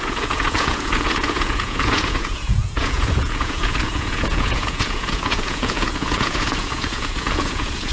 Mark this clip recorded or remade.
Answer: remade